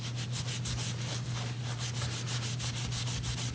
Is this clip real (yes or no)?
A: yes